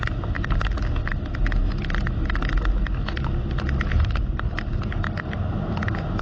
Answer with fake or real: real